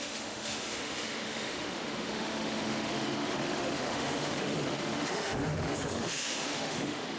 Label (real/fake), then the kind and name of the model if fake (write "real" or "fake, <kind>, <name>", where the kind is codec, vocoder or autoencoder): fake, autoencoder, DAC-VAE